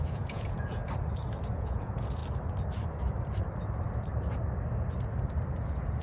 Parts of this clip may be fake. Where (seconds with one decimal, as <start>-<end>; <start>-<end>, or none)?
0.0-0.8; 1.5-2.2